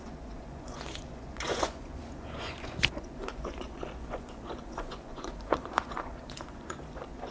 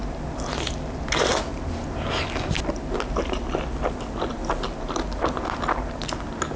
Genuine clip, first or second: second